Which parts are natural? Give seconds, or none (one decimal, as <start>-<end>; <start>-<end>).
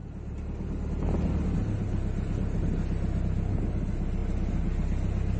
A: 0.0-5.4